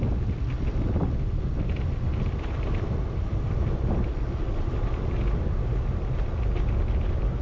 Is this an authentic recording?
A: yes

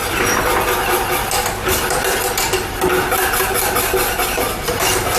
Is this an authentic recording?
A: no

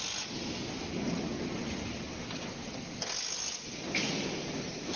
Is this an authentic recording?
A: yes